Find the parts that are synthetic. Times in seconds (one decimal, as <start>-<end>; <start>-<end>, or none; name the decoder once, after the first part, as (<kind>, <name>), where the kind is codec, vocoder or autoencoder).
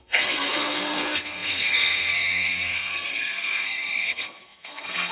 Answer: 0.0-5.1 (codec, SNAC)